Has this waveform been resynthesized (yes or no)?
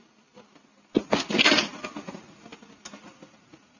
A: no